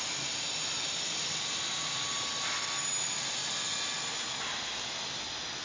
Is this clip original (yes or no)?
yes